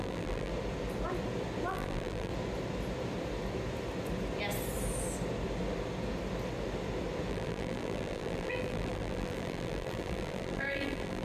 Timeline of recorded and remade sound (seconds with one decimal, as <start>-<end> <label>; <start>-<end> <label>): 0.0-0.5 remade; 0.5-1.7 recorded; 1.7-2.3 remade; 2.3-7.3 recorded; 7.3-11.2 remade